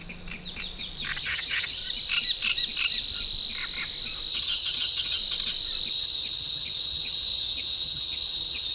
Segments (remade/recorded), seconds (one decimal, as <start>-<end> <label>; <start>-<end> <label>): 0.0-1.2 recorded; 1.2-1.8 remade; 1.8-4.3 recorded; 4.3-5.2 remade; 5.2-5.9 recorded; 5.9-8.7 remade